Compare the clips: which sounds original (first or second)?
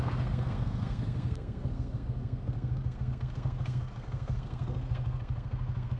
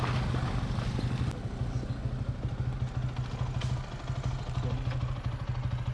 second